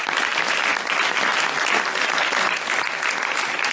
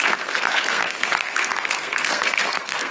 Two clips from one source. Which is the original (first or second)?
first